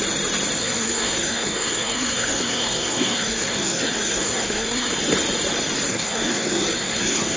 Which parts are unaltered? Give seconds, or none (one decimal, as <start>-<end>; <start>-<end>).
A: 0.0-0.6; 4.9-5.9